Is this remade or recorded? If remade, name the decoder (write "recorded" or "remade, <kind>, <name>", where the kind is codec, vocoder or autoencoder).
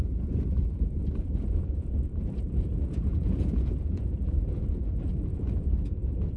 remade, vocoder, Vocos